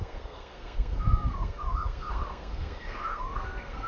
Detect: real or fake fake